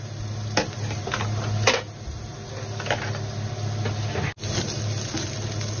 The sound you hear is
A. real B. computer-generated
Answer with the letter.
A